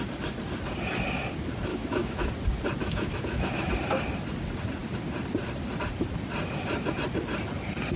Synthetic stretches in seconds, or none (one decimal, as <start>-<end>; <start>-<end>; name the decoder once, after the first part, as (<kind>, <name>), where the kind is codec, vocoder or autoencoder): 1.7-2.3 (autoencoder, DAC-VAE); 2.8-3.7

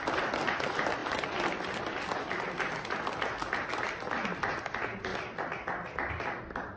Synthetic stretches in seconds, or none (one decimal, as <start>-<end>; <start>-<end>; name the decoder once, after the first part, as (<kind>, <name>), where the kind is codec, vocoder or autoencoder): none

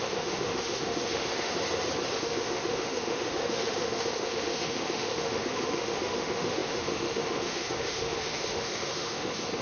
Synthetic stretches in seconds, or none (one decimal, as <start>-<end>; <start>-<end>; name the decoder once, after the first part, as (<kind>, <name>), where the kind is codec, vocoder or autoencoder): 0.0-1.5 (autoencoder, DAC-VAE); 2.1-9.6

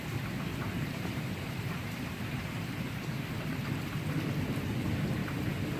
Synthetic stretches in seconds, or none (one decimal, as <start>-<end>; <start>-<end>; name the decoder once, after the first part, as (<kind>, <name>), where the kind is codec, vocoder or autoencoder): 0.5-2.3 (vocoder, BigVGAN v2)